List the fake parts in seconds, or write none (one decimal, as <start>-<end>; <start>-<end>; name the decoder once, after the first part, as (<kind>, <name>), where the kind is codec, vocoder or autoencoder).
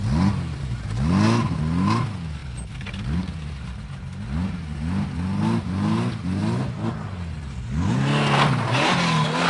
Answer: none